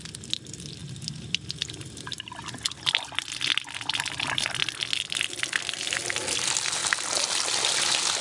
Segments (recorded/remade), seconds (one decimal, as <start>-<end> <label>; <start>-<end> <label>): 0.0-8.2 recorded